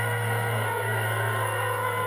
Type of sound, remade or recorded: remade